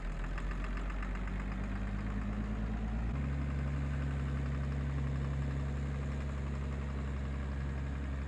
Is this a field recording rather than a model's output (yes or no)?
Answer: yes